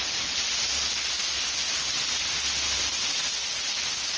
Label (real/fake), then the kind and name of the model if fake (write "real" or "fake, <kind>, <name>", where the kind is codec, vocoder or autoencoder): real